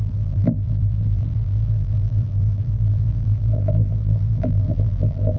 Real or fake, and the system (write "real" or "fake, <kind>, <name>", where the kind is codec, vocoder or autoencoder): fake, vocoder, BigVGAN v2